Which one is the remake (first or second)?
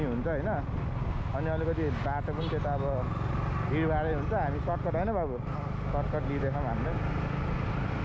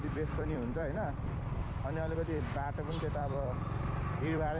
second